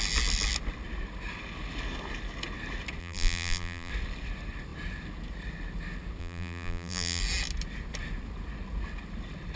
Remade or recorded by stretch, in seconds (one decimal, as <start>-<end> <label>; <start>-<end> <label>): 0.0-3.0 recorded; 3.0-3.9 remade; 3.9-6.2 recorded; 6.2-7.2 remade; 7.2-9.6 recorded